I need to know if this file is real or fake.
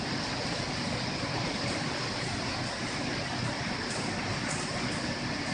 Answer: real